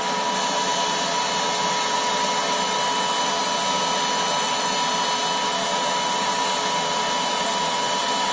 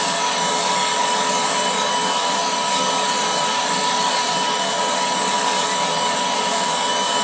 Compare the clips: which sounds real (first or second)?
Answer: first